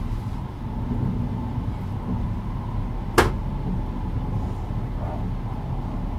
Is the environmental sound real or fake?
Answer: real